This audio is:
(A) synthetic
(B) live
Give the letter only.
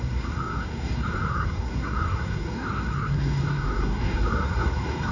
A